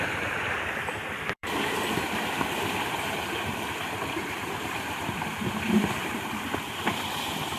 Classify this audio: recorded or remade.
remade